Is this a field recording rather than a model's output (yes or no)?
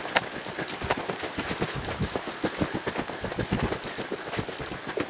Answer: yes